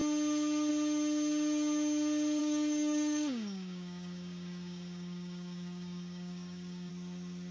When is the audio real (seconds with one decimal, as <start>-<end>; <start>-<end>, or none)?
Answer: 0.0-2.4; 6.9-7.5